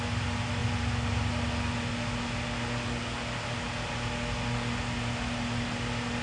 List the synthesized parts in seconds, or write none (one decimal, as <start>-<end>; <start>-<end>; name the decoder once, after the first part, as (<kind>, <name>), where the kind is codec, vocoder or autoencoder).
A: none